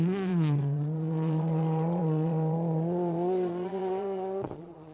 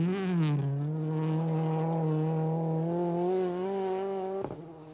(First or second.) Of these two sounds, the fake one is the first